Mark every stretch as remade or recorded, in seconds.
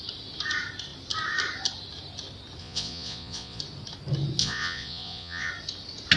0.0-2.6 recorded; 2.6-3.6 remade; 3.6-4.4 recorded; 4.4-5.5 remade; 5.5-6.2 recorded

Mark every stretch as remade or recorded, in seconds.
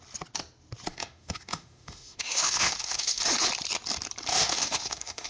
0.0-0.9 recorded; 0.9-3.2 remade; 3.2-4.3 recorded; 4.3-5.3 remade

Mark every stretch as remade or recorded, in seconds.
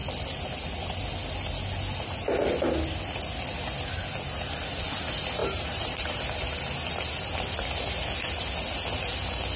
0.0-5.4 recorded; 5.4-6.2 remade; 6.2-9.6 recorded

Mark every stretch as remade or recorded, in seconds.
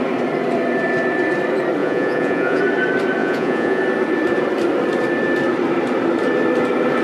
0.0-1.8 recorded; 1.8-2.6 remade; 2.6-3.2 recorded; 3.2-3.8 remade; 3.8-7.0 recorded